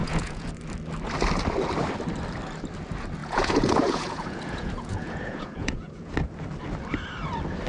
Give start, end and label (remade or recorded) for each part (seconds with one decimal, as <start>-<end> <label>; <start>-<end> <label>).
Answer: 0.0-0.5 remade; 0.5-3.2 recorded; 3.2-6.1 remade; 6.1-7.7 recorded